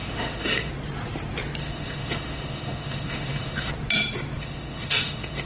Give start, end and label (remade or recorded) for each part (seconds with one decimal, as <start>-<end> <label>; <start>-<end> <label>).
0.0-0.7 remade; 0.7-1.6 recorded; 1.6-3.7 remade; 3.7-4.4 recorded; 4.4-5.5 remade